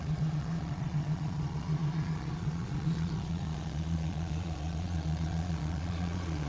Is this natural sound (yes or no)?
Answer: no